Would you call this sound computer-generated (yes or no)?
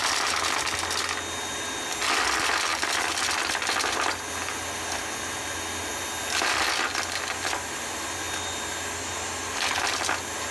no